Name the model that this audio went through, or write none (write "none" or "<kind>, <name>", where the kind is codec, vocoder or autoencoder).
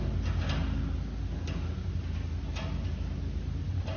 none